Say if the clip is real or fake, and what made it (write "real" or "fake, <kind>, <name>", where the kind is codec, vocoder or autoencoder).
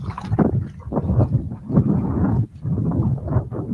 real